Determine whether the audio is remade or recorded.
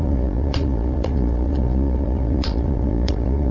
remade